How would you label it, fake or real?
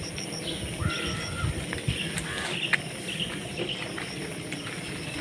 real